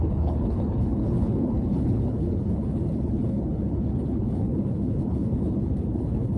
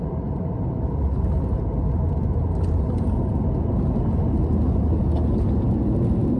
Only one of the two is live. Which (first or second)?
second